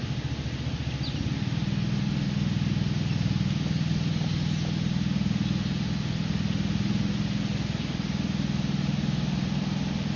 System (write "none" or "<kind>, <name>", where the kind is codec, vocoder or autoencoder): none